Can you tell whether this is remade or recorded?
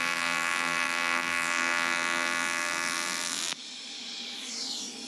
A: remade